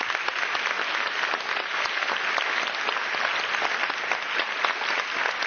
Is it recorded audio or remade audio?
recorded